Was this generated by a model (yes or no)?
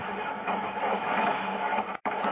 yes